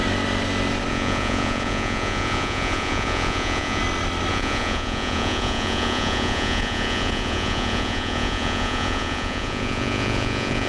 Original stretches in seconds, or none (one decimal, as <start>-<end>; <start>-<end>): 0.0-0.9; 3.8-4.3